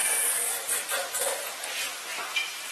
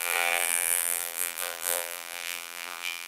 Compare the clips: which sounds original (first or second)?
first